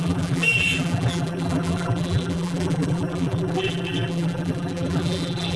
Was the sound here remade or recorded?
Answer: remade